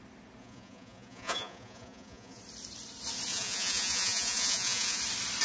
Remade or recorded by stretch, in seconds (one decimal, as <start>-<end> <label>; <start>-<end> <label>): 0.0-0.4 recorded; 0.4-2.4 remade; 2.4-3.3 recorded; 3.3-5.0 remade; 5.0-5.4 recorded